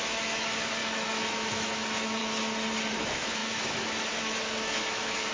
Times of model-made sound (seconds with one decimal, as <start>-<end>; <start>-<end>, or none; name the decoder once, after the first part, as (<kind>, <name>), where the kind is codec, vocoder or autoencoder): 0.0-2.2 (autoencoder, DAC-VAE); 2.9-5.3